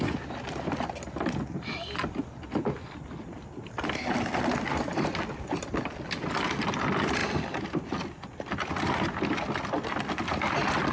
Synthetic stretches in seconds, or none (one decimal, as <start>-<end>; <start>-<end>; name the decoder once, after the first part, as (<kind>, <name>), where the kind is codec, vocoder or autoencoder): none